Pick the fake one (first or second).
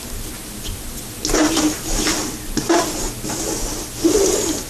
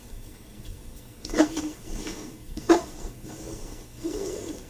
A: second